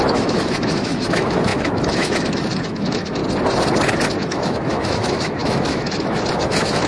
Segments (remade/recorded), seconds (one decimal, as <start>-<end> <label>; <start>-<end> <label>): 0.0-3.2 remade; 3.2-4.2 recorded; 4.2-6.9 remade